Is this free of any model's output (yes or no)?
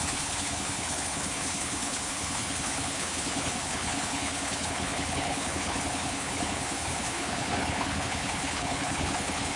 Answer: no